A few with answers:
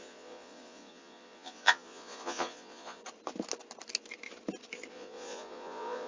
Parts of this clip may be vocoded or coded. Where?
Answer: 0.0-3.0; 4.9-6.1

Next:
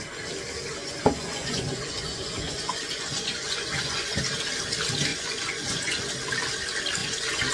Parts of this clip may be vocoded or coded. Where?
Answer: 0.8-4.2; 5.1-6.1; 7.0-7.5

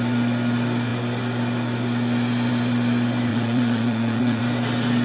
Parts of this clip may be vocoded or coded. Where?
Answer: 3.3-4.4

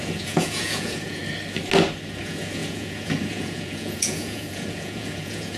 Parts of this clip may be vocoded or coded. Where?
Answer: 0.0-1.2; 2.2-5.6

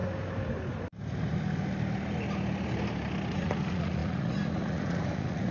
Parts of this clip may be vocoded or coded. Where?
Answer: 3.3-5.5